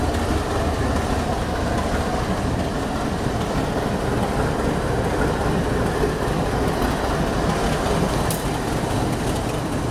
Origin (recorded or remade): recorded